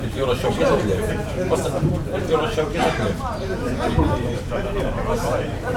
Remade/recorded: remade